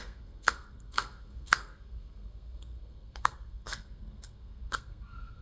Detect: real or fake fake